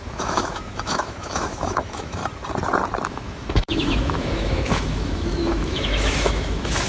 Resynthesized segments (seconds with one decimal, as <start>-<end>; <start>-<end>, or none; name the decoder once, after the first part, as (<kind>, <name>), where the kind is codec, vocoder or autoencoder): 0.0-2.2 (autoencoder, DAC-VAE); 3.1-6.9